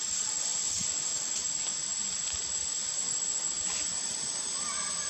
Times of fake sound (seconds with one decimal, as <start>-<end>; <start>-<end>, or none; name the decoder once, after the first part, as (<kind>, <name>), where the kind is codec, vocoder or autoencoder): none